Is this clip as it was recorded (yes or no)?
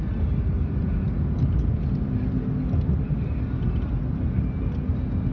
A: yes